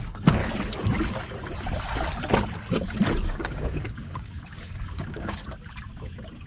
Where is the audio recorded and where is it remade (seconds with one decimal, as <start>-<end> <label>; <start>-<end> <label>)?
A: 0.0-0.4 remade; 0.4-3.3 recorded; 3.3-5.4 remade; 5.4-6.5 recorded